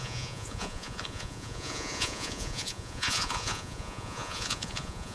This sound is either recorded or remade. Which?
remade